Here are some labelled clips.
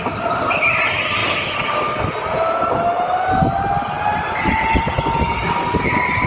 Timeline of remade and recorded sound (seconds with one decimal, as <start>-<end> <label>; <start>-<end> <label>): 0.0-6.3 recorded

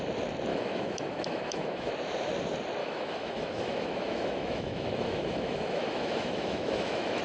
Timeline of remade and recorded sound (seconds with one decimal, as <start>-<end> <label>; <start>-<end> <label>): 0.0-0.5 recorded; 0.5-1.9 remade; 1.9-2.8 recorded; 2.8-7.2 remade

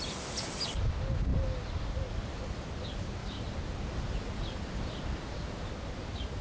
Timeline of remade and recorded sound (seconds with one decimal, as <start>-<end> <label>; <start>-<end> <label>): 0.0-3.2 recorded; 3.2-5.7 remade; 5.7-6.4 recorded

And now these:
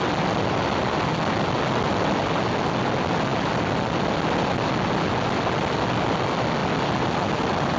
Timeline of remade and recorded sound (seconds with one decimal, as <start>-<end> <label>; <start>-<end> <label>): 0.0-7.8 recorded

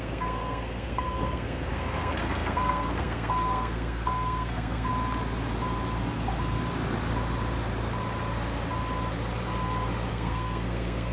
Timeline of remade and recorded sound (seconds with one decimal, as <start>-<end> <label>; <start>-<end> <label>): 0.0-4.9 remade; 4.9-10.1 recorded; 10.1-11.1 remade

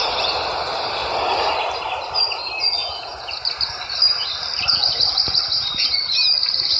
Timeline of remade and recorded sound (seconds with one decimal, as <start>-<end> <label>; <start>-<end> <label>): 0.0-2.8 recorded; 2.8-3.3 remade; 3.3-6.8 recorded

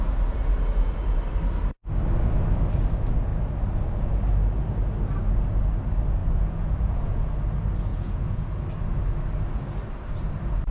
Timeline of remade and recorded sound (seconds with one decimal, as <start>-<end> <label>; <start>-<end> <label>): 0.0-6.2 recorded; 6.2-7.3 remade; 7.3-7.9 recorded; 7.9-8.6 remade; 8.6-10.7 recorded